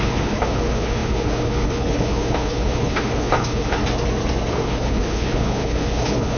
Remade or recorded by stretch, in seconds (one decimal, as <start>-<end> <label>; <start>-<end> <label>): 0.0-3.8 remade; 3.8-4.5 recorded; 4.5-6.4 remade